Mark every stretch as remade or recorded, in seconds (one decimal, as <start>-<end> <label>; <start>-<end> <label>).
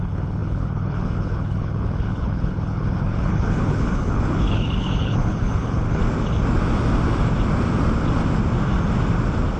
0.0-6.0 remade; 6.0-9.6 recorded